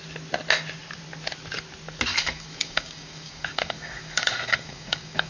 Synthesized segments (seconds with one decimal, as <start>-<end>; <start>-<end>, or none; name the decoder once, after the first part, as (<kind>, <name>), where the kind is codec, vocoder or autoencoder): 2.1-5.3 (codec, DAC)